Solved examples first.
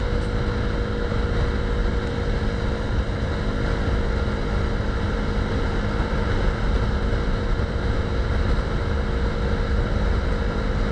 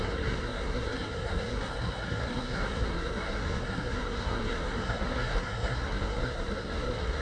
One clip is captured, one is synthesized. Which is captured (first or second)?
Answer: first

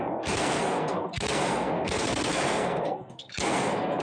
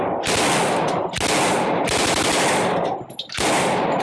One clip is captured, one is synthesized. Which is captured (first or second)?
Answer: second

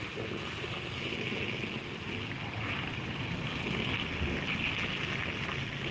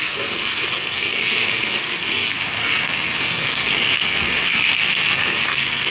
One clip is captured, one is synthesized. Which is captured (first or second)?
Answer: first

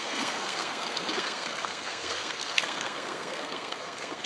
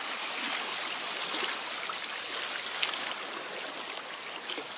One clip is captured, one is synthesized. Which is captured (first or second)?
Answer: second